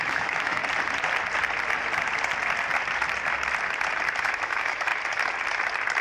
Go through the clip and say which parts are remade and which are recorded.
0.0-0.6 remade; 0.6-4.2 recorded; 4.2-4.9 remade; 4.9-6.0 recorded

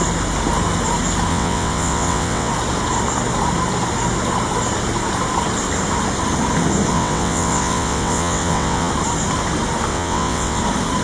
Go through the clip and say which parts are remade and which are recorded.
0.0-1.3 recorded; 1.3-2.5 remade; 2.5-6.9 recorded; 6.9-8.9 remade; 8.9-9.9 recorded; 9.9-10.6 remade; 10.6-11.0 recorded

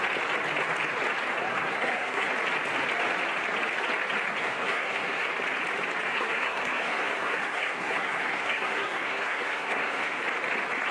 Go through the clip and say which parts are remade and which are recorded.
0.0-1.5 recorded; 1.5-2.3 remade; 2.3-4.4 recorded; 4.4-5.3 remade; 5.3-6.1 recorded; 6.1-10.2 remade; 10.2-10.9 recorded

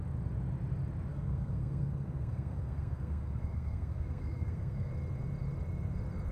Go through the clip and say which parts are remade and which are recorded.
0.0-1.1 recorded; 1.1-4.9 remade; 4.9-6.3 recorded